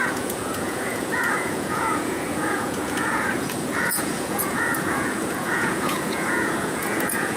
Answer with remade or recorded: remade